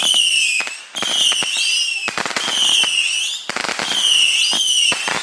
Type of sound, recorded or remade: recorded